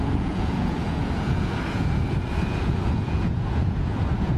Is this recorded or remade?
remade